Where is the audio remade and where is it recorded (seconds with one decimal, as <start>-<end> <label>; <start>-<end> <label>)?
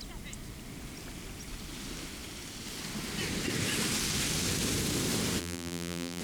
0.0-5.4 recorded; 5.4-6.2 remade